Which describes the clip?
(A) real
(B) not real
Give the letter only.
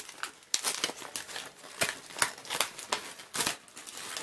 A